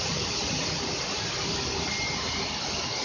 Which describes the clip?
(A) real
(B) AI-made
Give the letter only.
A